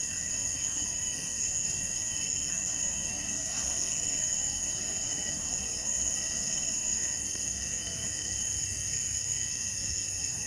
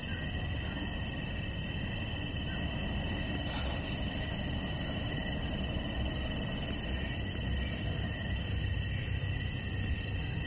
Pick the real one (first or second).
second